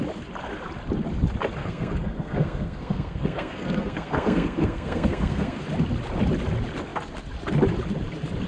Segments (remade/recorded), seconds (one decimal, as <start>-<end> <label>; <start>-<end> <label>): 0.0-1.6 recorded; 1.6-5.6 remade; 5.6-8.5 recorded